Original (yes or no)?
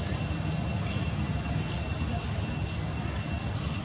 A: yes